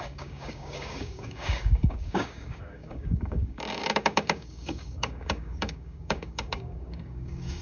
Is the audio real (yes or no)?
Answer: no